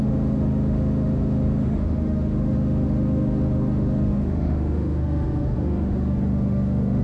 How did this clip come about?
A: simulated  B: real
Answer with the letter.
A